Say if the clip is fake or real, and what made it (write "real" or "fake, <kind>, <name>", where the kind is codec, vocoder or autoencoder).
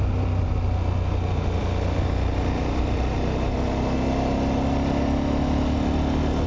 real